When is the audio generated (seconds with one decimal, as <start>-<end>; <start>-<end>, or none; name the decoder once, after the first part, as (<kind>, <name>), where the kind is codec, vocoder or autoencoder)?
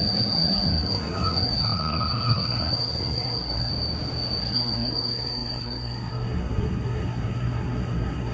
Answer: 0.0-3.7 (codec, SNAC); 4.4-8.3